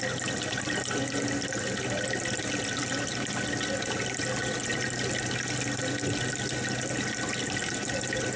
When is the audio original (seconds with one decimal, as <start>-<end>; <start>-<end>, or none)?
0.0-8.4